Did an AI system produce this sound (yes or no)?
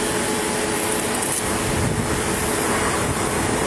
yes